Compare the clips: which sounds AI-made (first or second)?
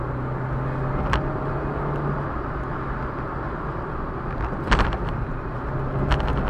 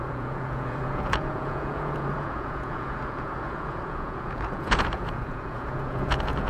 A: second